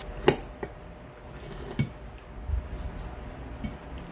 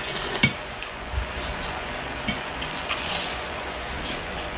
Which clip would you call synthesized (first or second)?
second